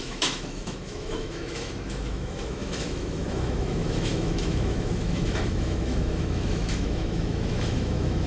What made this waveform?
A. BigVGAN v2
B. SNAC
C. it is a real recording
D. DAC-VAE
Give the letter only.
D